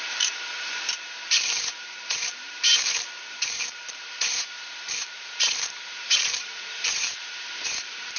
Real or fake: fake